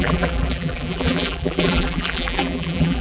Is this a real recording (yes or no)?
no